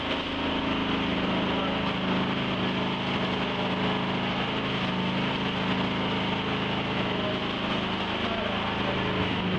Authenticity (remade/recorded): recorded